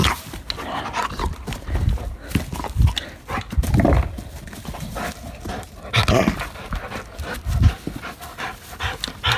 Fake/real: real